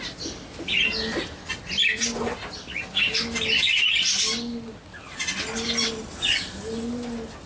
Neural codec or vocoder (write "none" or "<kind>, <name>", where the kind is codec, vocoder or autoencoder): none